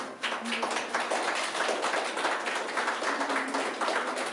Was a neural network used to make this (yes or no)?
no